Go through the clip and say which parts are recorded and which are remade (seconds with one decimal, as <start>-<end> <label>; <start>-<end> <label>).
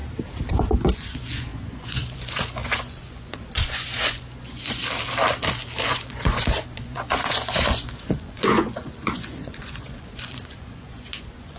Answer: 0.0-0.5 recorded; 0.5-4.8 remade; 4.8-5.8 recorded; 5.8-11.6 remade